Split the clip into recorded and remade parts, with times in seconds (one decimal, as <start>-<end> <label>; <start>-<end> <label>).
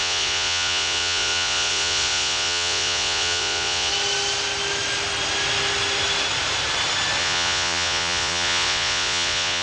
0.0-3.9 remade; 3.9-7.2 recorded; 7.2-9.6 remade